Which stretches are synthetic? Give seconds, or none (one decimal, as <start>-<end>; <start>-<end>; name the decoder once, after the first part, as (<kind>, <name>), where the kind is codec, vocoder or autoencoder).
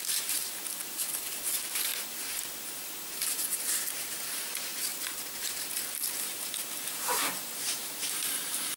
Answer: 0.0-1.9 (vocoder, BigVGAN v2); 2.8-4.9; 7.6-8.8